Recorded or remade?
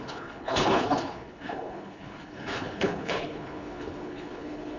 remade